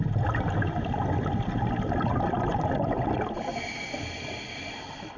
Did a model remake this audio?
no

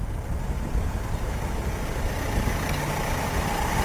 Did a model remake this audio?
no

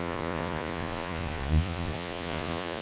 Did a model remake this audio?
yes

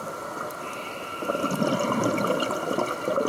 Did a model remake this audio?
no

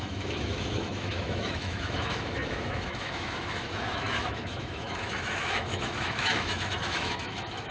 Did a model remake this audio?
yes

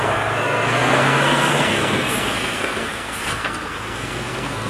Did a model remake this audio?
yes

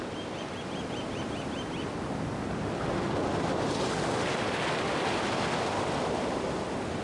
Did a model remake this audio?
no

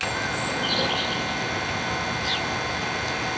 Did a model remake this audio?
no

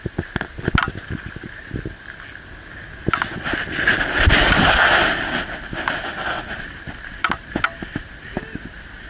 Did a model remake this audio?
no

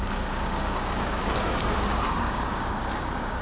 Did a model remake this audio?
yes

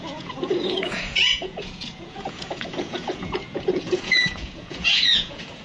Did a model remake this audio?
yes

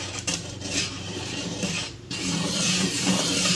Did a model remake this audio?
yes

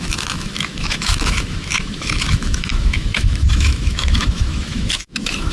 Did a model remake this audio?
yes